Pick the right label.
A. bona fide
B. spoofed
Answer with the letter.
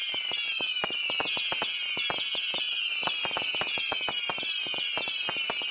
A